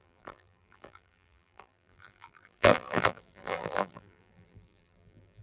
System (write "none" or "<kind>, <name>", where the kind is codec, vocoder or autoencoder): vocoder, BigVGAN v2